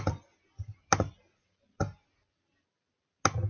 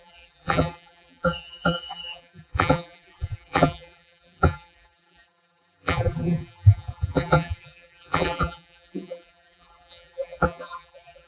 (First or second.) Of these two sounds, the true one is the first